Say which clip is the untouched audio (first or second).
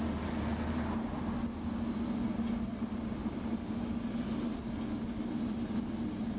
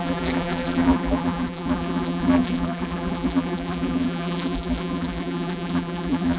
first